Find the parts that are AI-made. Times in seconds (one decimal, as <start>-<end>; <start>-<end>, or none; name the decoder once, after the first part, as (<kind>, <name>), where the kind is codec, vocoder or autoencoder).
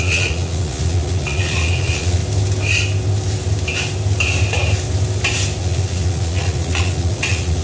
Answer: 0.0-2.2 (vocoder, Vocos); 5.6-7.6